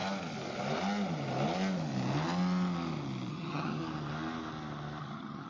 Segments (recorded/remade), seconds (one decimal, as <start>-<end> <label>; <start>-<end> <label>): 0.0-3.3 recorded; 3.3-3.8 remade; 3.8-5.0 recorded; 5.0-5.5 remade